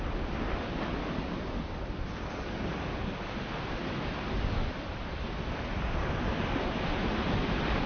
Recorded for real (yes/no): yes